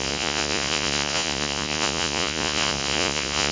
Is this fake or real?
fake